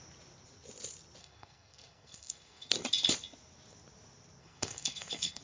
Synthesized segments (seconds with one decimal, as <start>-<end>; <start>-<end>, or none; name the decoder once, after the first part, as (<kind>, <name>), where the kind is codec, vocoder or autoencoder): 1.2-2.7 (codec, SNAC); 4.4-5.4

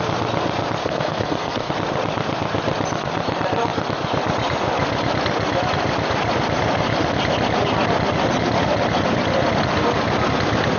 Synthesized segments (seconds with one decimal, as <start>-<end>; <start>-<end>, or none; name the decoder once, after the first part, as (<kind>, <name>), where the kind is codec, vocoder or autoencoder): 0.8-1.7 (codec, SNAC)

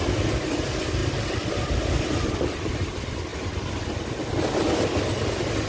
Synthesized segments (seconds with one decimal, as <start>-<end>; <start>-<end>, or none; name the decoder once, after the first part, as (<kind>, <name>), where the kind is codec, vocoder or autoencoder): none

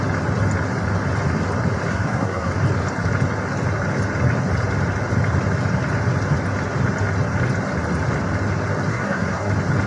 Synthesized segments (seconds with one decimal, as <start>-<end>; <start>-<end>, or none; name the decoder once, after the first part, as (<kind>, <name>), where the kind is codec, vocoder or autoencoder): 1.9-2.5 (codec, SNAC); 8.9-9.5

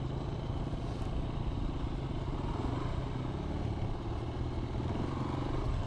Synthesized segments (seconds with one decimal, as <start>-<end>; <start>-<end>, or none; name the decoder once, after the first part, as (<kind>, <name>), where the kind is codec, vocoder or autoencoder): none

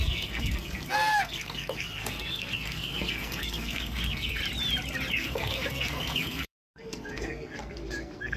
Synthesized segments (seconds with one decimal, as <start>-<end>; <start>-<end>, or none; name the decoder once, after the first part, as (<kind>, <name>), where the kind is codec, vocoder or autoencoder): 0.0-4.4 (codec, SNAC); 5.1-8.4